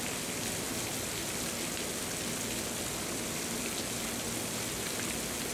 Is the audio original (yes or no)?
yes